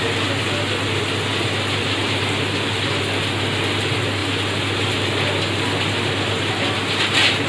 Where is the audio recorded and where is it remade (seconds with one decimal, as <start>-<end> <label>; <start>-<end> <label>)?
0.0-1.3 recorded; 1.3-3.0 remade; 3.0-4.2 recorded; 4.2-6.5 remade; 6.5-7.5 recorded